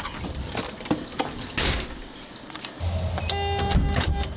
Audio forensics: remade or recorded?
recorded